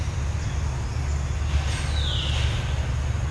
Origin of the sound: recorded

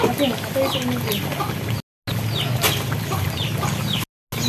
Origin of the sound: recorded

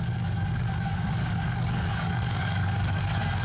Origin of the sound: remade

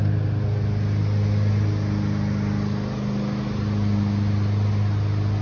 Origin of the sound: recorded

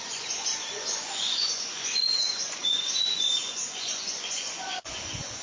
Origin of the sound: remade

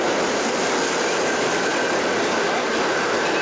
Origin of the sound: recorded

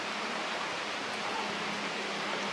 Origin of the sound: recorded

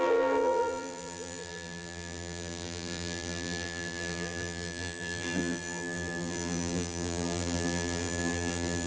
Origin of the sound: remade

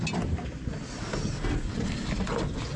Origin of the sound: recorded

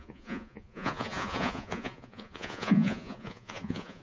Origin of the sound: remade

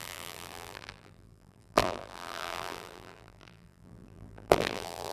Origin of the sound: remade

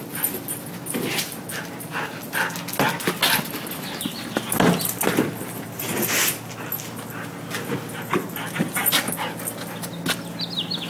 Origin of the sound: recorded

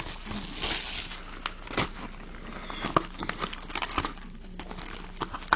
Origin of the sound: recorded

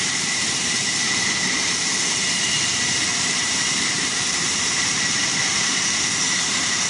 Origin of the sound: remade